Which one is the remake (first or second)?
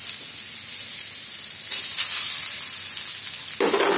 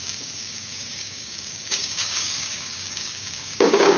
second